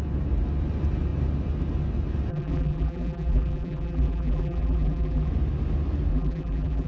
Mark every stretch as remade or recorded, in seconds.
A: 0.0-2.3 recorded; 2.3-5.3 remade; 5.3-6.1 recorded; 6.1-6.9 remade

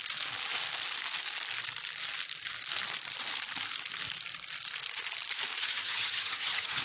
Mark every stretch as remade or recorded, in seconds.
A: 0.0-5.6 recorded; 5.6-6.8 remade

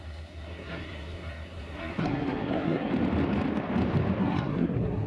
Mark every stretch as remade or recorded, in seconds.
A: 0.0-2.9 remade; 2.9-4.2 recorded; 4.2-5.1 remade

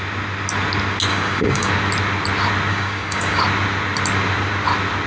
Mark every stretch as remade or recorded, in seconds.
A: 0.0-1.1 recorded; 1.1-1.7 remade; 1.7-2.7 recorded; 2.7-3.4 remade; 3.4-5.1 recorded

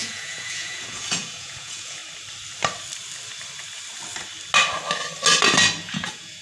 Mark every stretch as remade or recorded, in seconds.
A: 0.0-2.0 remade; 2.0-5.8 recorded; 5.8-6.4 remade

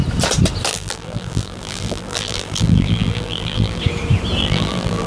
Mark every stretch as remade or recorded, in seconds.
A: 0.0-0.7 recorded; 0.7-3.8 remade; 3.8-4.4 recorded; 4.4-5.1 remade